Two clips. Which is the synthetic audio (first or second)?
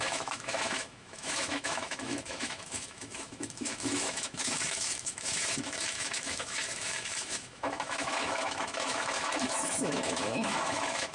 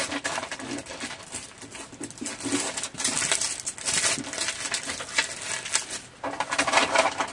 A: first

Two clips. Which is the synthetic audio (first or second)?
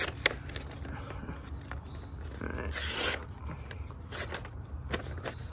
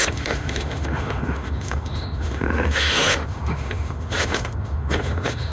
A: second